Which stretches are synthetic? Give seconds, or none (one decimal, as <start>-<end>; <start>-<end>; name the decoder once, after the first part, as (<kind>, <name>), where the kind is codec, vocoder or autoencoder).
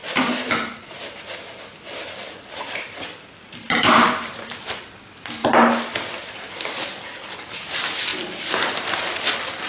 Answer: 0.0-4.6 (vocoder, BigVGAN v2); 5.4-6.4; 8.1-8.9